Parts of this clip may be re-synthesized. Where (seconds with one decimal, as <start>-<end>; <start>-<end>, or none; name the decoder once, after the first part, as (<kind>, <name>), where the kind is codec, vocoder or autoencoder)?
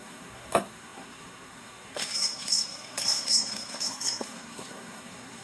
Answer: 0.0-5.4 (codec, SNAC)